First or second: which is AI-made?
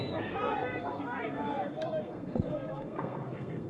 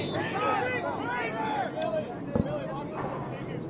first